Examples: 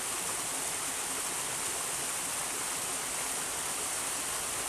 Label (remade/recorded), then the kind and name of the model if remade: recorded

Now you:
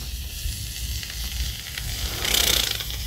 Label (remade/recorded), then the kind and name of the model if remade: recorded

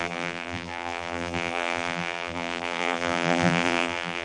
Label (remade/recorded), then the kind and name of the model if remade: remade, vocoder, BigVGAN v2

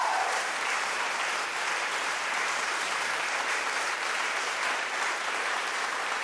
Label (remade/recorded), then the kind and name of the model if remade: remade, vocoder, BigVGAN v2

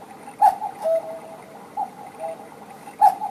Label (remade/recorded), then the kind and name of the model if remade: remade, vocoder, BigVGAN v2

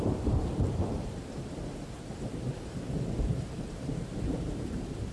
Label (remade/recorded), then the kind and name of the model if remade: remade, vocoder, BigVGAN v2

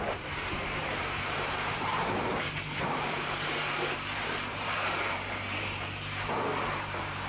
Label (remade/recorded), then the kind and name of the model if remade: remade, vocoder, BigVGAN v2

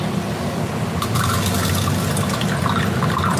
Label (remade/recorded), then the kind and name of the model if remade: recorded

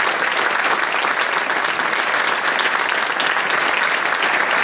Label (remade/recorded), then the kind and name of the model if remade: recorded